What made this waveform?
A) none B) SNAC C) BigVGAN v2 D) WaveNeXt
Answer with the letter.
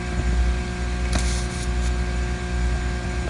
A